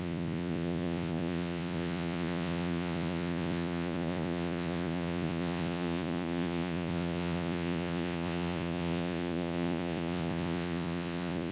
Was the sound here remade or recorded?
remade